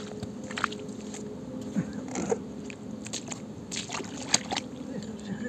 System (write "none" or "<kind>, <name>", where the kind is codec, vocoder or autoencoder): none